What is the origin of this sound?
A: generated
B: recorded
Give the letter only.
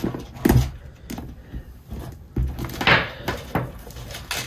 B